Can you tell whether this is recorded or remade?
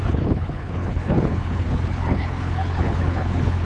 remade